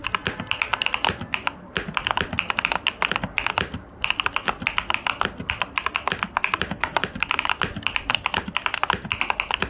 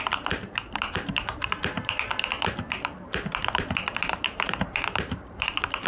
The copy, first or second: second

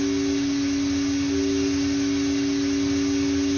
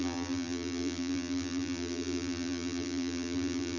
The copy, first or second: second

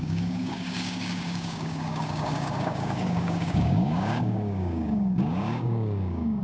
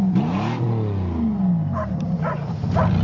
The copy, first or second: first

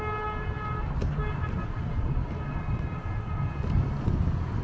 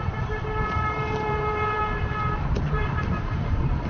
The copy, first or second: second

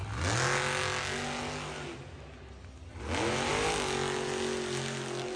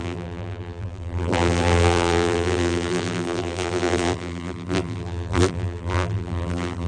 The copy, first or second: second